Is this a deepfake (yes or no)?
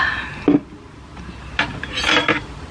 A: no